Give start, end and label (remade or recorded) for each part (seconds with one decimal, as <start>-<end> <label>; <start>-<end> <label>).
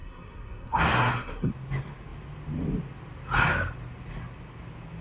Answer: 0.0-1.5 remade; 1.5-5.0 recorded